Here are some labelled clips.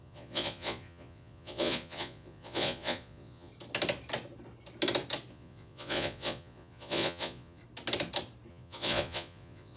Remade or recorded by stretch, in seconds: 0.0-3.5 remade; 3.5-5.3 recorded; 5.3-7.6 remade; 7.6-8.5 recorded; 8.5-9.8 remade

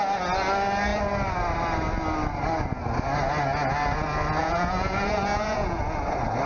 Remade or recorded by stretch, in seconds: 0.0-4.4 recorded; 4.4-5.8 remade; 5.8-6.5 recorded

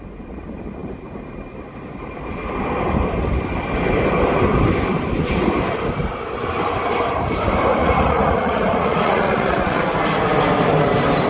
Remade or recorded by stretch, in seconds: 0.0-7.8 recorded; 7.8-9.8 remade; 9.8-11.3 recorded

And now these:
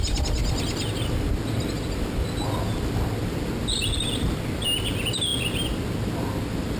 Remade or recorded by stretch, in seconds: 0.0-6.8 recorded